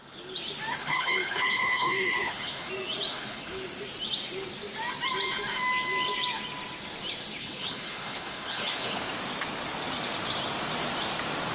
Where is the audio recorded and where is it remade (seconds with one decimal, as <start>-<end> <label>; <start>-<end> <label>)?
0.0-0.8 recorded; 0.8-2.7 remade; 2.7-3.1 recorded; 3.1-3.6 remade; 3.6-7.4 recorded; 7.4-9.0 remade; 9.0-11.5 recorded